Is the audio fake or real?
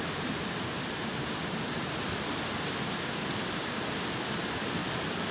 real